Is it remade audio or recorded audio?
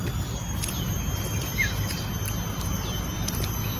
recorded